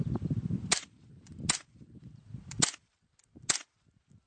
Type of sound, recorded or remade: recorded